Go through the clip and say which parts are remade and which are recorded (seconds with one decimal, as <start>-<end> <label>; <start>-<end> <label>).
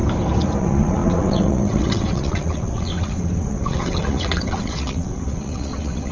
0.0-0.6 recorded; 0.6-6.1 remade